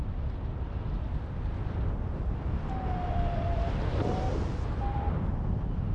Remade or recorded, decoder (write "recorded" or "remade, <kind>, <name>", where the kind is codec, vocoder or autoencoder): recorded